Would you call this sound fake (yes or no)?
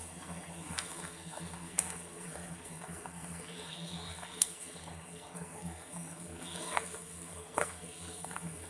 yes